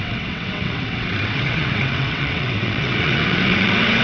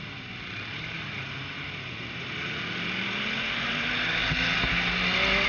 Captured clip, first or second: second